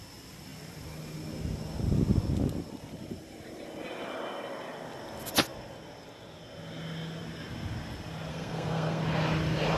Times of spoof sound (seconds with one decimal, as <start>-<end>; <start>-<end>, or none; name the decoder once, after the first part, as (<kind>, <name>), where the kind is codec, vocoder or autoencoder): 8.3-9.0 (codec, SNAC)